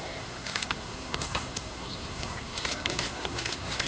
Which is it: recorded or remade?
remade